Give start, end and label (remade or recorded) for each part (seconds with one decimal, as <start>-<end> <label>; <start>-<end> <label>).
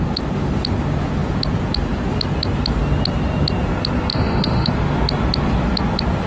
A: 0.0-4.1 recorded; 4.1-4.7 remade; 4.7-6.3 recorded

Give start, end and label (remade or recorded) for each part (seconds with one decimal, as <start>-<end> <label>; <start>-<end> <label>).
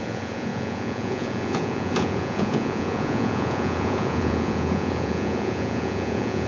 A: 0.0-6.5 remade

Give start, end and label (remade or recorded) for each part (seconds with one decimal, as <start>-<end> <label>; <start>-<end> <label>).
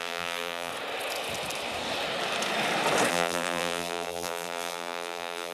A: 0.0-0.7 remade; 0.7-3.1 recorded; 3.1-5.5 remade